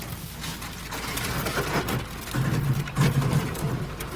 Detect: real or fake real